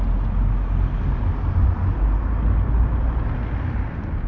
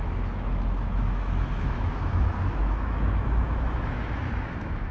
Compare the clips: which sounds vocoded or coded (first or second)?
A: second